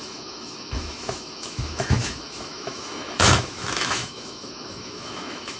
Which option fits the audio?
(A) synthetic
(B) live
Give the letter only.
A